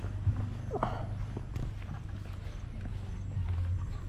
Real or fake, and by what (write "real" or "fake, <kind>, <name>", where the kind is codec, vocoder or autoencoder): real